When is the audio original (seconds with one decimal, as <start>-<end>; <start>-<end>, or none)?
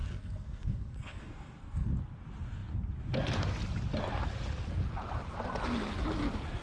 1.9-6.6